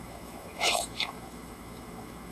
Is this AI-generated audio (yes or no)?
yes